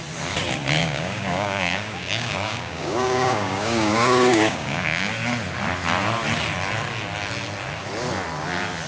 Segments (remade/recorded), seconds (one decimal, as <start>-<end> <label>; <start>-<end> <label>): 0.0-0.8 recorded; 0.8-5.1 remade; 5.1-8.9 recorded